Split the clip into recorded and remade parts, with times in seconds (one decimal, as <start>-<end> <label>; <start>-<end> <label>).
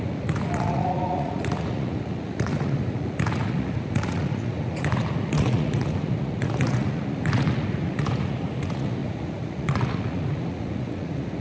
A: 0.0-11.4 remade